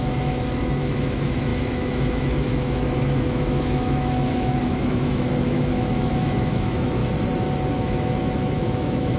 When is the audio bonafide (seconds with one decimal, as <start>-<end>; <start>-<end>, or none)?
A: 7.0-7.7